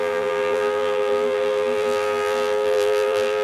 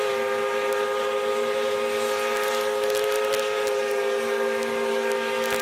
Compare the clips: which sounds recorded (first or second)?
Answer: second